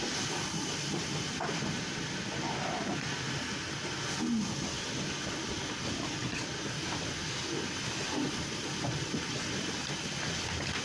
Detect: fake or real real